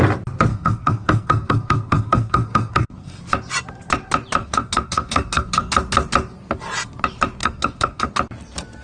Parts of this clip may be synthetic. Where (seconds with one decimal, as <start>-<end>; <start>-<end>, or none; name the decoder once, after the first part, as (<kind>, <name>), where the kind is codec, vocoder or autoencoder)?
0.5-3.2 (codec, SNAC); 4.4-5.7; 7.4-8.1